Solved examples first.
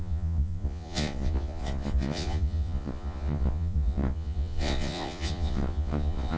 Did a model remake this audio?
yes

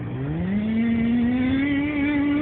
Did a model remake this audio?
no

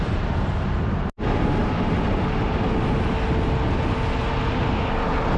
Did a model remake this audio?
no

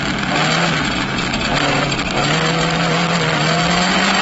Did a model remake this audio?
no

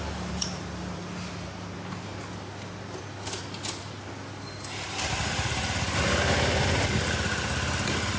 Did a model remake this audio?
no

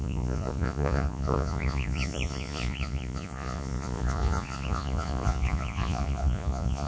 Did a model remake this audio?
yes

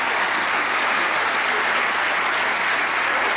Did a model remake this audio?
no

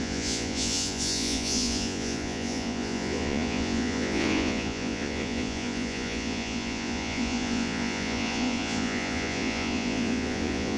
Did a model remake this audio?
yes